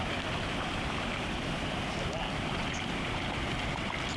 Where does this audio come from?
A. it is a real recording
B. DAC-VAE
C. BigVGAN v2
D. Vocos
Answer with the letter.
A